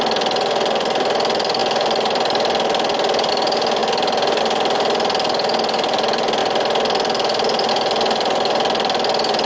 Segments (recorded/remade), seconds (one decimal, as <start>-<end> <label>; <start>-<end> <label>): 0.0-9.5 recorded